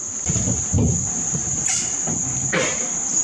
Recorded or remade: recorded